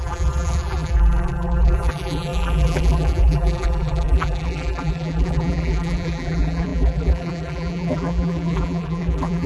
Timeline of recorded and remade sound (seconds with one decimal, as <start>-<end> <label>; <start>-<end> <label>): 0.0-9.5 remade